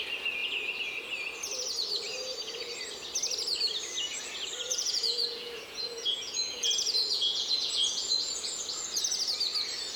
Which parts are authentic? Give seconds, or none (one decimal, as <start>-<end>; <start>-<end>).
0.0-4.7; 8.8-10.0